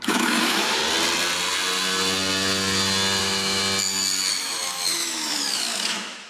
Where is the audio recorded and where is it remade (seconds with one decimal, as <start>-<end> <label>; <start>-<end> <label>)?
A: 0.0-0.8 remade; 0.8-3.2 recorded; 3.2-3.6 remade; 3.6-4.3 recorded; 4.3-6.3 remade